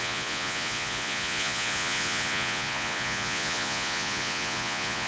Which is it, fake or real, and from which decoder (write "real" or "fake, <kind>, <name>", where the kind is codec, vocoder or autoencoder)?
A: fake, vocoder, Vocos